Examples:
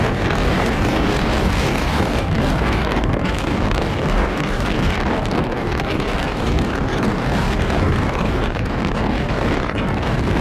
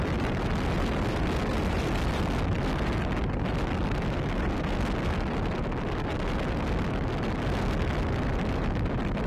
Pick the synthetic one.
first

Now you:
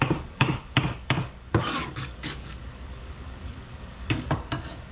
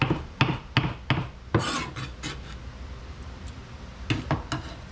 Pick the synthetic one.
first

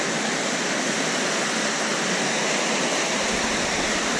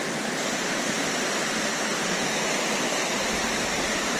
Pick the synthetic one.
second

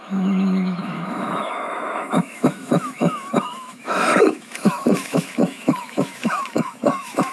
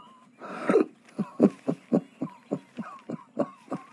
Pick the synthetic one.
first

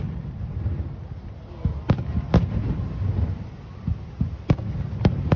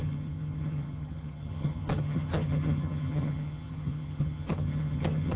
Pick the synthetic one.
second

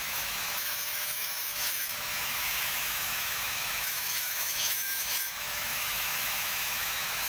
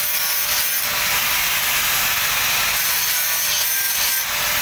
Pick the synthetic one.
first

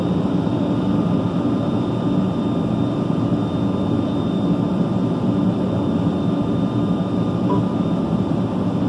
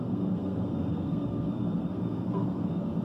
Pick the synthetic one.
second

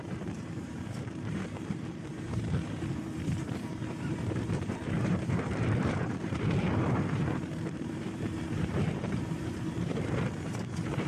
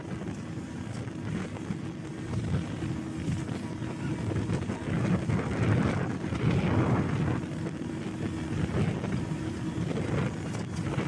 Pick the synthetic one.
first